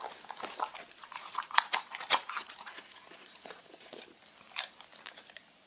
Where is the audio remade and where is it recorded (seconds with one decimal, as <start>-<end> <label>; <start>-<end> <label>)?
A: 0.0-1.1 recorded; 1.1-3.9 remade; 3.9-5.7 recorded